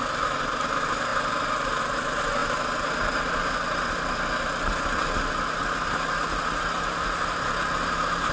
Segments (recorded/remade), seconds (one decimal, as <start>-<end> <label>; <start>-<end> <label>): 0.0-8.3 recorded